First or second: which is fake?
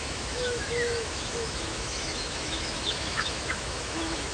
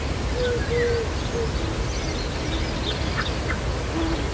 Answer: first